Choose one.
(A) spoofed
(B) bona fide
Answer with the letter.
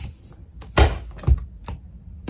B